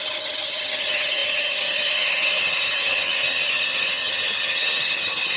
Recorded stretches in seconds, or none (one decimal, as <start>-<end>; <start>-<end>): none